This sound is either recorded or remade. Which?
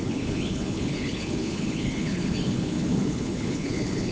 remade